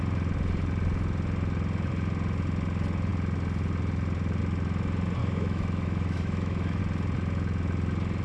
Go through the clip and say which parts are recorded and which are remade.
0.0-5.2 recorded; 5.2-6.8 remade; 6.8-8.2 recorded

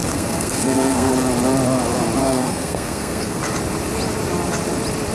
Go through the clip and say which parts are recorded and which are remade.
0.0-1.1 remade; 1.1-2.2 recorded; 2.2-3.4 remade; 3.4-5.1 recorded